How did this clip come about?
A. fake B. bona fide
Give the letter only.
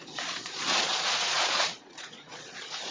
A